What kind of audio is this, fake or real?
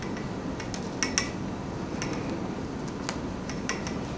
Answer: real